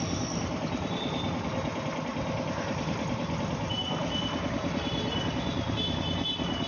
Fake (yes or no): no